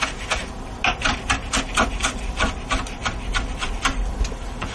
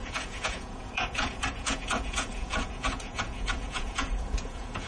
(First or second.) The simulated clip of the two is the second